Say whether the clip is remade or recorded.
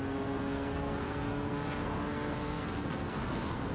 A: remade